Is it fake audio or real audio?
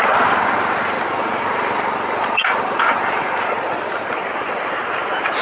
real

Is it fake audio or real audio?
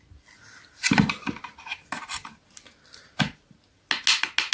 real